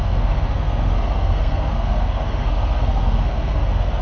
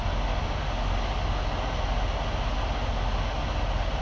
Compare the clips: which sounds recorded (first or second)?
second